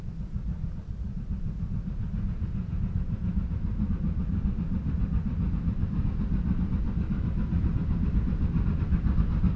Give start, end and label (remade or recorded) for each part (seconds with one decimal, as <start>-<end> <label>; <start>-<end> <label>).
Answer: 0.0-9.6 recorded

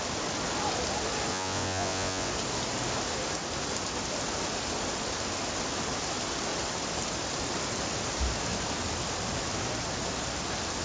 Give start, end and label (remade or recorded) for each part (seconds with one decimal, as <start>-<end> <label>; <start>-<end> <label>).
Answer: 0.0-1.3 recorded; 1.3-2.3 remade; 2.3-10.8 recorded